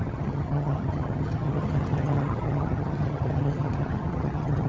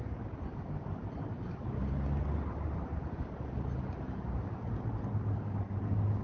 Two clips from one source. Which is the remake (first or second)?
first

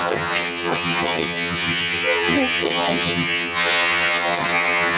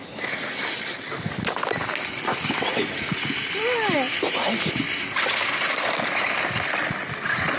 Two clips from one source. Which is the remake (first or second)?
first